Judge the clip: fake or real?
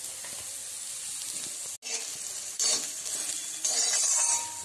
real